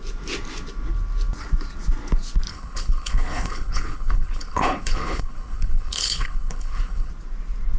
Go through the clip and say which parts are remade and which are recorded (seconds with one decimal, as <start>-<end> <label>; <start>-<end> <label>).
0.0-2.5 recorded; 2.5-7.1 remade; 7.1-7.8 recorded